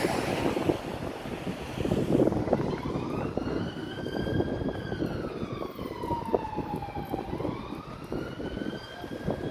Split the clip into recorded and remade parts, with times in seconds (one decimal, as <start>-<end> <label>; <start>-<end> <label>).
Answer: 0.0-3.5 recorded; 3.5-4.0 remade; 4.0-9.5 recorded